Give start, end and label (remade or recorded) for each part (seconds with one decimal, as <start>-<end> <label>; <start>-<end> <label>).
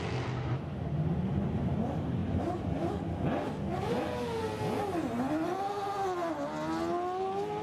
0.0-2.2 recorded; 2.2-2.9 remade; 2.9-7.6 recorded